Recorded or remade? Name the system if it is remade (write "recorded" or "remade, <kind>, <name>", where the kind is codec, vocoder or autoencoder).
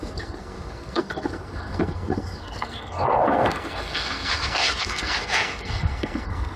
remade, codec, SNAC